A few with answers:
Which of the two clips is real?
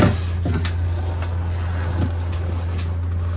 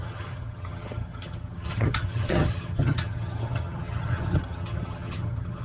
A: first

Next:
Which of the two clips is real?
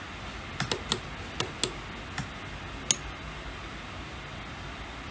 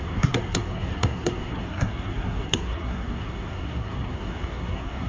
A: first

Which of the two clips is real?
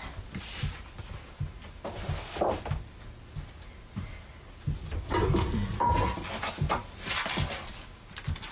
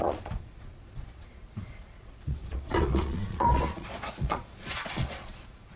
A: first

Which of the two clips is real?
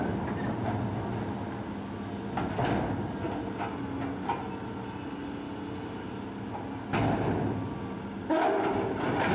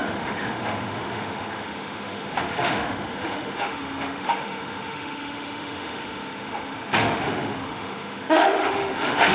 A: first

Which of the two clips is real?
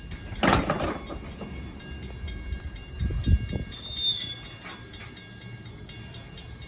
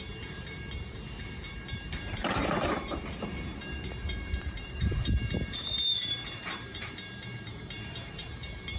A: first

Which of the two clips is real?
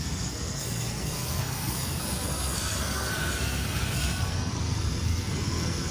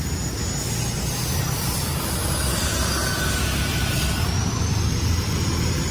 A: second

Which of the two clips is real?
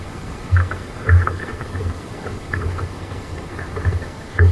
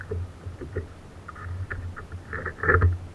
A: second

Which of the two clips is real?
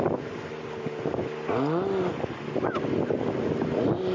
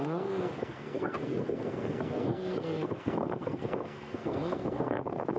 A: first